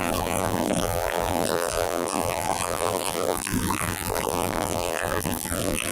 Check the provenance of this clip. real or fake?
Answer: fake